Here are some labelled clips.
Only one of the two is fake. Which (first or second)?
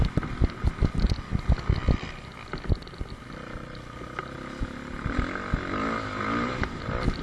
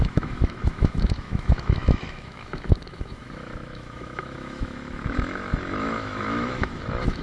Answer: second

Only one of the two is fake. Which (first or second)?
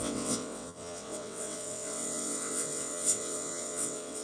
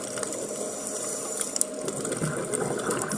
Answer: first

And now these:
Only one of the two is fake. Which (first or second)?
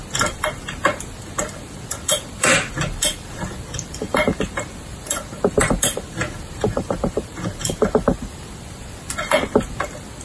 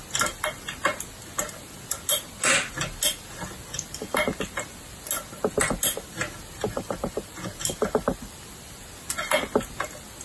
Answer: first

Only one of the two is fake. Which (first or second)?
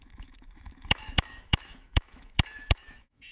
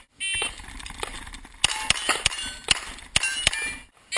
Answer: first